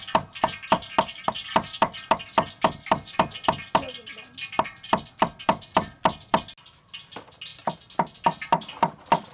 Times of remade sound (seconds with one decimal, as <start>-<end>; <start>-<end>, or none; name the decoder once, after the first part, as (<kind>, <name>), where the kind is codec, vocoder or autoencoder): none